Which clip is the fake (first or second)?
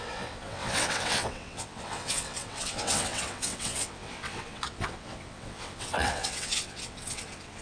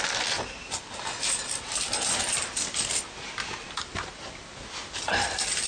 first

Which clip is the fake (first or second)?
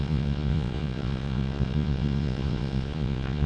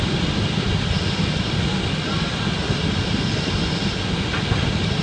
first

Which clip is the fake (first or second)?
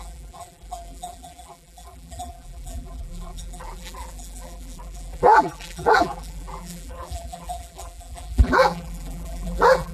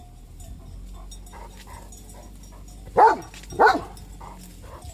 first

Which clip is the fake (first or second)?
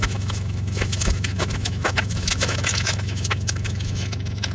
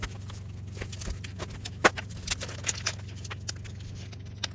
first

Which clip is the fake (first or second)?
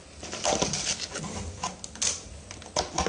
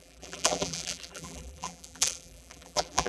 second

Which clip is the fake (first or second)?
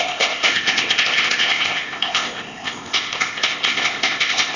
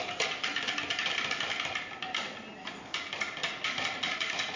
first